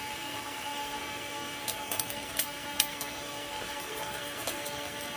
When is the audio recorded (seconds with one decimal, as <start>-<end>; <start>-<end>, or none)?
none